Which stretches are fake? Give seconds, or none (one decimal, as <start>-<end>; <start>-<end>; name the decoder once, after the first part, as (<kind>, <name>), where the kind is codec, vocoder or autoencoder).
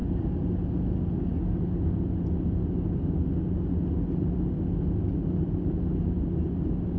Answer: none